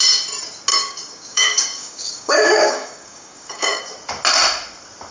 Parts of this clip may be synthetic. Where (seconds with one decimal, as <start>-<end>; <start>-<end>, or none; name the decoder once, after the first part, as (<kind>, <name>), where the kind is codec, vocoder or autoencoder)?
0.7-3.8 (codec, DAC)